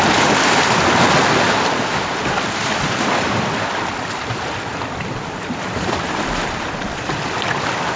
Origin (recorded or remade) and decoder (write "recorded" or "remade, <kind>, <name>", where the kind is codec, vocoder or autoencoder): recorded